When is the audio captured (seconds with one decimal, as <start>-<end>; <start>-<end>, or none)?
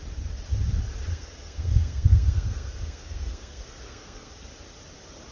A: 0.0-1.1; 4.3-5.3